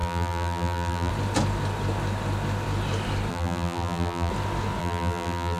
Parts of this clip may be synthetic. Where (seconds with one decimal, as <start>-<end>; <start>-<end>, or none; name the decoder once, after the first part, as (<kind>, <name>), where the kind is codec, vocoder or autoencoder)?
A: 0.0-1.1 (vocoder, BigVGAN v2); 3.3-4.3; 4.8-5.6